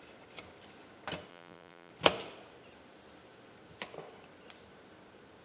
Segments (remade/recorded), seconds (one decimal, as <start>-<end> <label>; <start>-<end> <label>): 0.0-1.3 recorded; 1.3-1.9 remade; 1.9-5.4 recorded